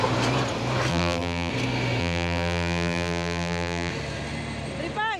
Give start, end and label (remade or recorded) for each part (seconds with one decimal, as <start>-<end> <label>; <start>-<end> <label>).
0.0-0.9 recorded; 0.9-1.5 remade; 1.5-2.0 recorded; 2.0-3.9 remade; 3.9-5.2 recorded